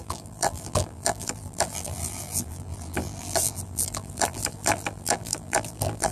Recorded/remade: remade